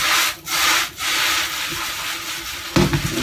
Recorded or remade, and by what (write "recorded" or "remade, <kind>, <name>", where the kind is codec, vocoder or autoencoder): recorded